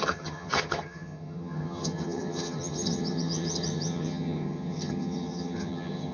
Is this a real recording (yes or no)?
no